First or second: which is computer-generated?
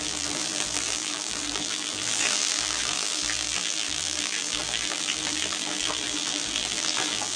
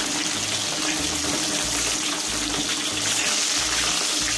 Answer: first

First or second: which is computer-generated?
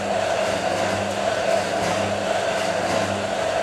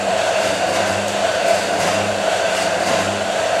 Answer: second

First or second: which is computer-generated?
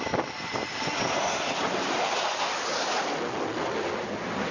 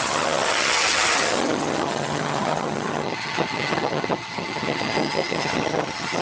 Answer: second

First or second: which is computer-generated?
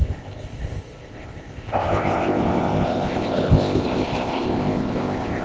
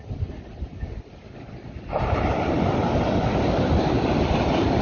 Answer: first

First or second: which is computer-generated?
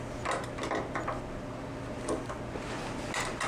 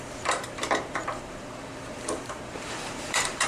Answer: second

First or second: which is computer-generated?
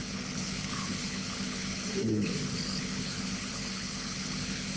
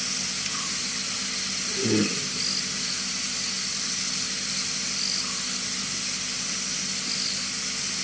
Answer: first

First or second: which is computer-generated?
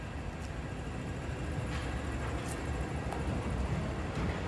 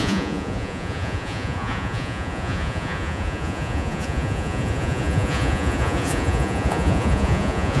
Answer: second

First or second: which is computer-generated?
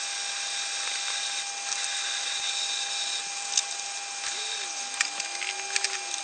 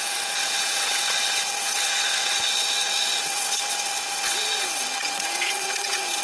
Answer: second